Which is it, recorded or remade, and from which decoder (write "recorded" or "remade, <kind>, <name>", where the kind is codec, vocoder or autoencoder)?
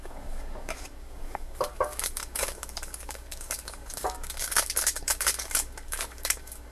remade, codec, DAC